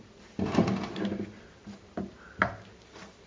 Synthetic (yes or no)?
yes